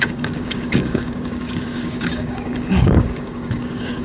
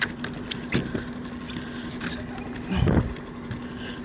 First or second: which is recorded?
second